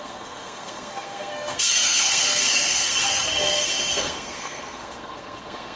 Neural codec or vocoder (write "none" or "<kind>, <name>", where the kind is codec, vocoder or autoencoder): codec, SNAC